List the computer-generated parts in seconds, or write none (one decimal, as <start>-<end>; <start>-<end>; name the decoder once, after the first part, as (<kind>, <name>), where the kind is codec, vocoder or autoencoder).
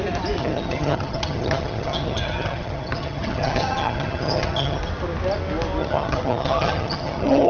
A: 0.4-4.8 (vocoder, HiFi-GAN); 5.8-7.5